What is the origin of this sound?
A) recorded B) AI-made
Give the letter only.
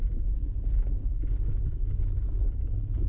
A